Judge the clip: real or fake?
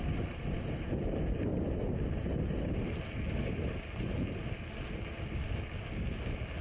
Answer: real